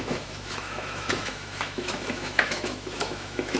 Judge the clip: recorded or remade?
remade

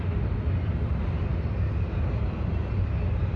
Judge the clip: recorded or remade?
recorded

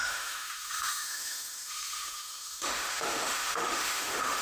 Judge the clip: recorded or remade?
remade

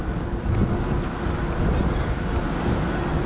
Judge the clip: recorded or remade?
recorded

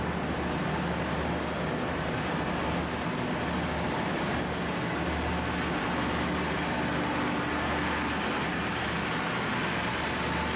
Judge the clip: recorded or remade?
recorded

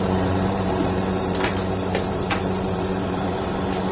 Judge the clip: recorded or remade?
remade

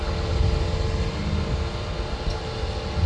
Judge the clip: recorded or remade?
recorded